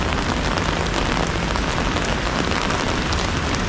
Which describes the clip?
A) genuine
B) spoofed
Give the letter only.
A